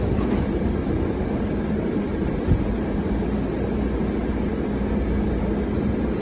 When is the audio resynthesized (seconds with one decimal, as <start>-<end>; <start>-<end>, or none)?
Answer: none